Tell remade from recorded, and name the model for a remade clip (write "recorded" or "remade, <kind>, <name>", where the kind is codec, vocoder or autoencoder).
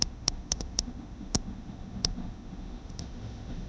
remade, autoencoder, DAC-VAE